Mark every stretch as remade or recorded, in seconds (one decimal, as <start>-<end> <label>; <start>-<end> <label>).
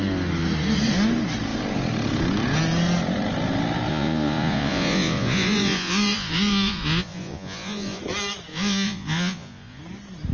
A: 0.0-3.9 recorded; 3.9-8.0 remade; 8.0-8.5 recorded; 8.5-9.8 remade; 9.8-10.3 recorded